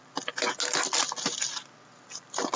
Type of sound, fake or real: real